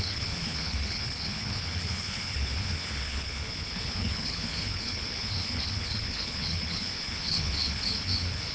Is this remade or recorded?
remade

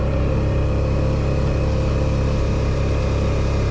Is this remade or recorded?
recorded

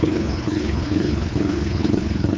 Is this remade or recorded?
remade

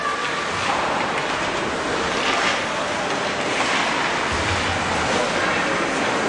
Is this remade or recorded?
recorded